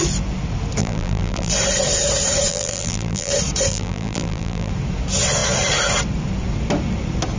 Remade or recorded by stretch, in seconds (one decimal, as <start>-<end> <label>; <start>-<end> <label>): 0.0-0.8 recorded; 0.8-1.5 remade; 1.5-2.5 recorded; 2.5-3.3 remade; 3.3-3.7 recorded; 3.7-4.7 remade; 4.7-7.4 recorded